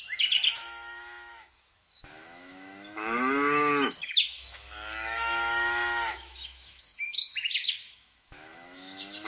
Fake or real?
fake